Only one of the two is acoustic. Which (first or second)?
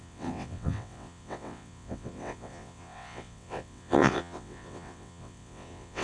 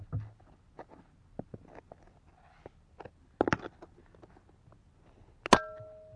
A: second